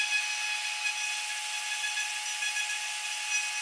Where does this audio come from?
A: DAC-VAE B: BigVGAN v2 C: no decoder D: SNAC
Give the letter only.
C